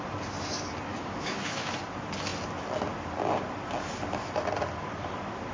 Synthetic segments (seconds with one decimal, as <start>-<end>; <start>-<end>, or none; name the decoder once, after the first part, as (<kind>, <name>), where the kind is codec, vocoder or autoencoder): 0.9-1.7 (autoencoder, DAC-VAE)